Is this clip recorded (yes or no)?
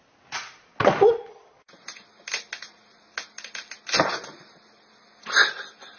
yes